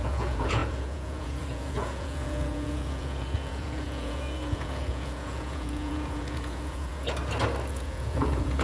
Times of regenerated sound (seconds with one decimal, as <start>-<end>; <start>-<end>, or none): 0.0-7.2; 7.7-8.6